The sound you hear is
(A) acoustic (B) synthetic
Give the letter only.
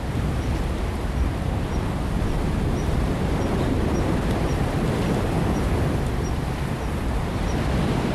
A